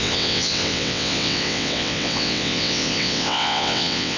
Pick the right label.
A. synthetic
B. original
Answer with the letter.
A